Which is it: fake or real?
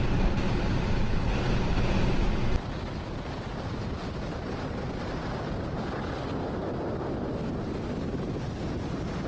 real